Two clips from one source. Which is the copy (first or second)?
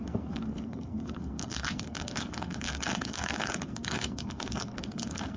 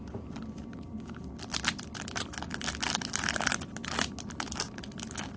first